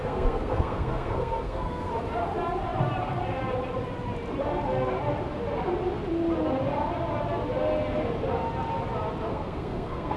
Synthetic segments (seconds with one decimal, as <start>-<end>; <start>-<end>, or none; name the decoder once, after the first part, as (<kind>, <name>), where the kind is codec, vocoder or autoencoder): 0.0-1.9 (codec, SNAC); 9.3-10.2